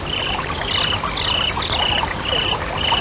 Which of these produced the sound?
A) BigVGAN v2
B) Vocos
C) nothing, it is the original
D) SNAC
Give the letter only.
C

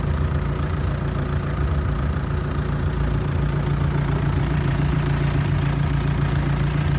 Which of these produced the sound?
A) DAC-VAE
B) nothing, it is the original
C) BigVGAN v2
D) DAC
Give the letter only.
C